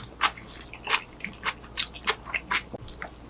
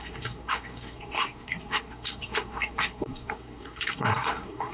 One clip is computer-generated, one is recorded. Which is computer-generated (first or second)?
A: second